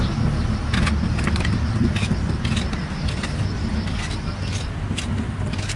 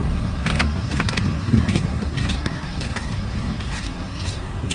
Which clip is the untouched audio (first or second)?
first